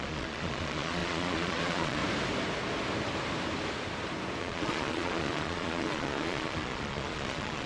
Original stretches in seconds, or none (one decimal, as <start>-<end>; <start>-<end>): 2.0-4.4

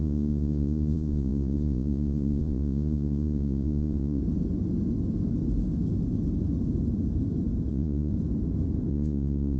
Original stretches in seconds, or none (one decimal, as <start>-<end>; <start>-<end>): 4.2-7.7; 8.1-8.9

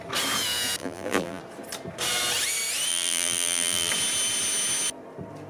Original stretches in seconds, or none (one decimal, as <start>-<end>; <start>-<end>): 0.0-0.8; 1.4-2.9; 3.9-5.5

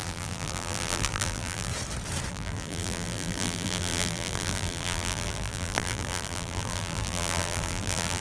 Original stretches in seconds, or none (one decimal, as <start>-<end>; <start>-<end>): 1.7-2.3

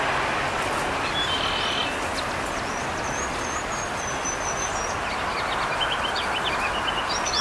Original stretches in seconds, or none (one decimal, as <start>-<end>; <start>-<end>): 0.0-7.4

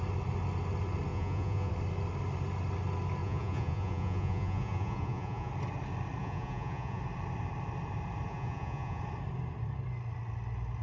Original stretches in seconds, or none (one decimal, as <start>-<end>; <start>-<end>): 0.0-1.1; 1.7-3.2; 5.5-6.2; 7.0-8.3; 9.0-10.8

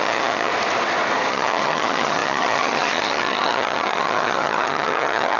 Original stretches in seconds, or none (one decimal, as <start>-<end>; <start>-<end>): 0.5-1.3

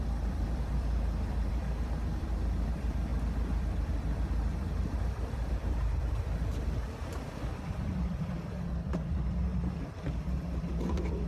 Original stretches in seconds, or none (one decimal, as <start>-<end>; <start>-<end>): none